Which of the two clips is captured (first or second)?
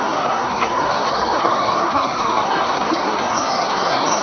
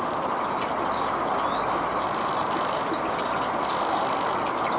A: second